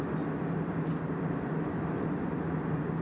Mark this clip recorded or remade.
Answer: recorded